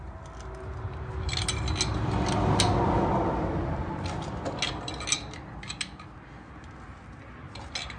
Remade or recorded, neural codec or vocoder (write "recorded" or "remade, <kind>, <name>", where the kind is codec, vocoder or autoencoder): recorded